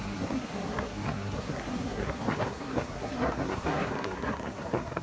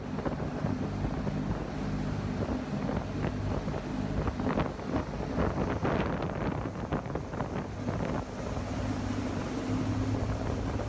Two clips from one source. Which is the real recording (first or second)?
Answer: second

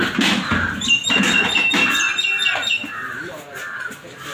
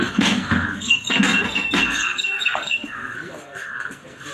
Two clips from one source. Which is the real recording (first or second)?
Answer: first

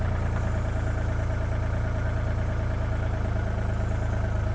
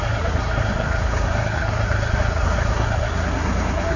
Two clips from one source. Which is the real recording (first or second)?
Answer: first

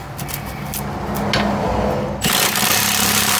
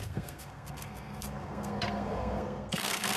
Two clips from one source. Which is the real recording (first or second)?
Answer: first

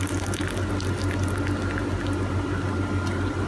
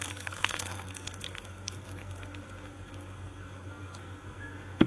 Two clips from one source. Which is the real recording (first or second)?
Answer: first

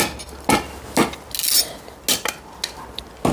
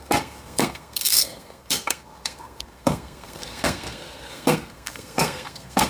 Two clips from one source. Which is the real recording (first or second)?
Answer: first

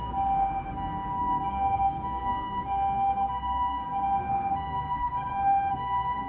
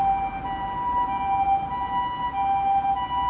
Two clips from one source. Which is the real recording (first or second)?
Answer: second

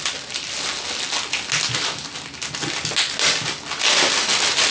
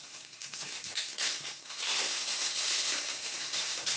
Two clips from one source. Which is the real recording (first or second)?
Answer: first